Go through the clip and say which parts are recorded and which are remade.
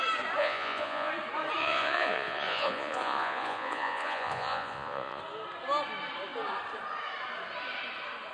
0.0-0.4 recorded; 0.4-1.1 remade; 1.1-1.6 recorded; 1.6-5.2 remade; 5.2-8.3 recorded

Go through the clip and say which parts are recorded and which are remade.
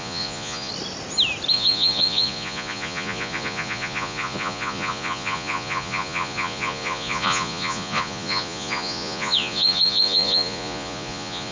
0.0-0.7 remade; 0.7-1.5 recorded; 1.5-11.5 remade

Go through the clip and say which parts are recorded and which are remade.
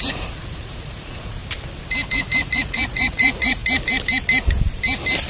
0.0-1.4 remade; 1.4-2.1 recorded; 2.1-3.6 remade; 3.6-5.3 recorded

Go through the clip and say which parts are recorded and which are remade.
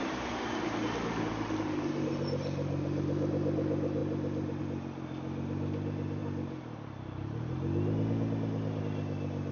0.0-9.5 recorded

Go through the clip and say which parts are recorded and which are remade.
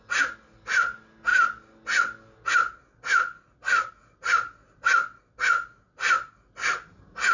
0.0-7.3 recorded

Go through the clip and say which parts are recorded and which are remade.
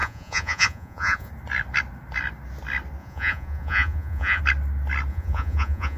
0.0-1.3 remade; 1.3-3.0 recorded; 3.0-4.4 remade; 4.4-5.1 recorded; 5.1-6.0 remade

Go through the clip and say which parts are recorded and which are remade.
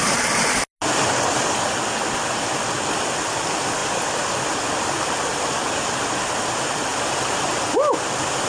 0.0-8.5 recorded